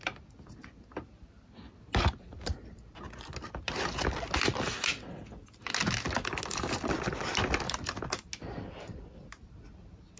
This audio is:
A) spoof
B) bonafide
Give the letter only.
B